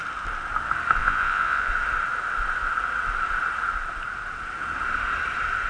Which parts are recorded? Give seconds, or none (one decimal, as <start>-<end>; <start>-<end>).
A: 0.0-1.0; 1.7-5.7